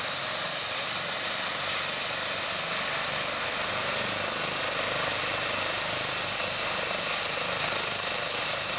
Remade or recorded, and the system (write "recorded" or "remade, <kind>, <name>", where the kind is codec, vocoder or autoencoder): recorded